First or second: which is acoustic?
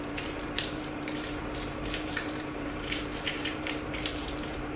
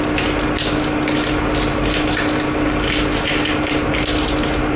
second